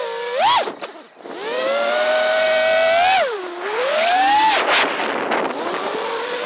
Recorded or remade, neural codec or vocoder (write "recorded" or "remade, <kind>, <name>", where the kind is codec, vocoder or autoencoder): recorded